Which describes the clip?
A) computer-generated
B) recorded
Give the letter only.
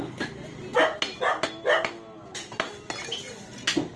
B